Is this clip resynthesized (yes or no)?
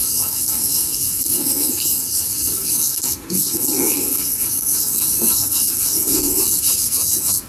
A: yes